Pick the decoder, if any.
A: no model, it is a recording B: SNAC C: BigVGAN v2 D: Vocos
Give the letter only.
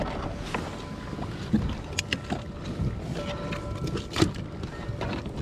A